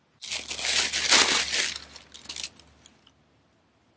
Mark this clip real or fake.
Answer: real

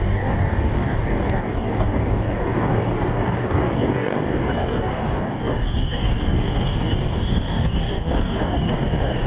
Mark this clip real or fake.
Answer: fake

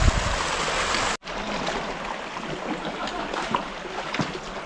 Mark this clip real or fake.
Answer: real